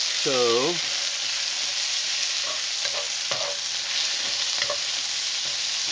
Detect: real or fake real